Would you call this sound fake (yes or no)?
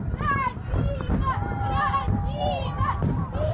yes